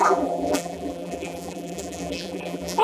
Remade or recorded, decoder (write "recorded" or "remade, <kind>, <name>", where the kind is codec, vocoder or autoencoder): remade, vocoder, BigVGAN v2